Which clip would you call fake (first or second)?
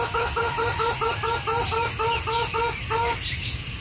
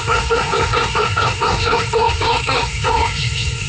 second